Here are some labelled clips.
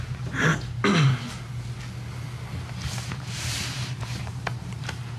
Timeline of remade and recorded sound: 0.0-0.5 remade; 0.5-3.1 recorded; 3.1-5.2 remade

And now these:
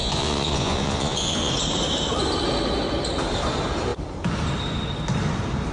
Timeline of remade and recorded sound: 0.0-1.5 remade; 1.5-5.7 recorded

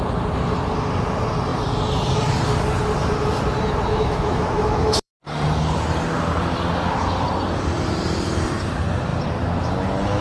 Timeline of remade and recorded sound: 0.0-3.9 recorded; 3.9-5.1 remade; 5.1-10.2 recorded

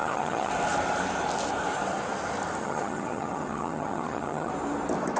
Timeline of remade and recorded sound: 0.0-0.5 remade; 0.5-2.6 recorded; 2.6-4.5 remade; 4.5-5.2 recorded

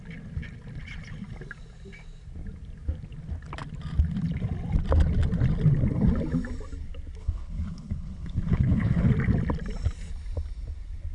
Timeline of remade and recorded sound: 0.0-7.2 recorded; 7.2-9.1 remade; 9.1-11.1 recorded

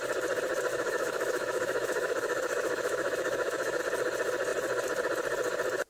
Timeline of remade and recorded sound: 0.0-0.7 recorded; 0.7-3.8 remade; 3.8-5.9 recorded